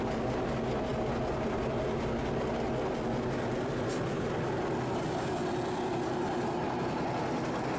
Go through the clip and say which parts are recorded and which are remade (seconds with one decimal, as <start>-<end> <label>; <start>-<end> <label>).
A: 0.0-0.9 recorded; 0.9-4.5 remade; 4.5-7.8 recorded